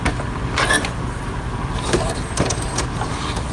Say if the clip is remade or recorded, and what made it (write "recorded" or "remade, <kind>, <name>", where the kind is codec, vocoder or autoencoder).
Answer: recorded